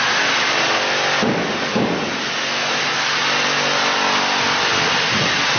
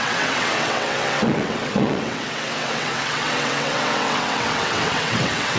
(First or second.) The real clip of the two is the first